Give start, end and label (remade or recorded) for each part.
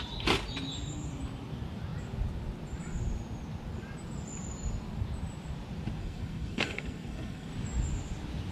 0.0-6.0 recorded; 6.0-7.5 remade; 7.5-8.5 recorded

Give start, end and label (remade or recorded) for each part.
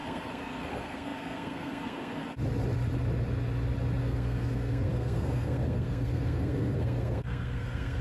0.0-2.2 remade; 2.2-4.0 recorded; 4.0-8.0 remade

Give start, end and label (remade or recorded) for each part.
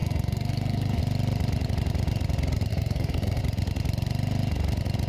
0.0-1.0 remade; 1.0-2.7 recorded; 2.7-3.4 remade; 3.4-5.1 recorded